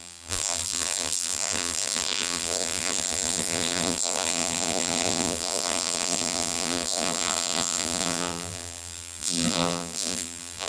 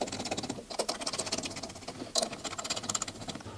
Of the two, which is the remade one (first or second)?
first